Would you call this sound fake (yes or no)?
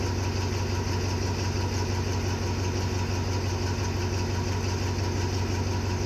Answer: no